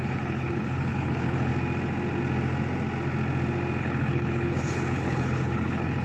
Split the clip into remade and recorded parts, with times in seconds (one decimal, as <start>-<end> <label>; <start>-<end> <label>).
0.0-1.5 remade; 1.5-3.8 recorded; 3.8-6.0 remade